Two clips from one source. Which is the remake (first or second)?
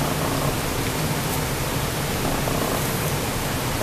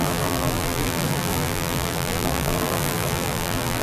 second